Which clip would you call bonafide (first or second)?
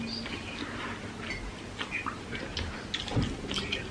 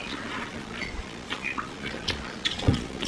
first